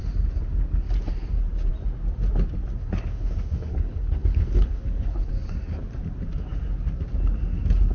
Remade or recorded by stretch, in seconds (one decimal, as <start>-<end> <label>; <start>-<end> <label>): 0.0-2.8 recorded; 2.8-5.3 remade; 5.3-7.9 recorded